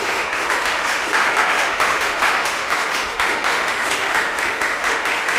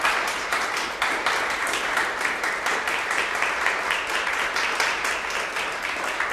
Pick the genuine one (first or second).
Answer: second